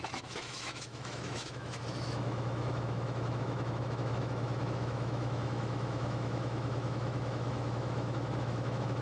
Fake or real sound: fake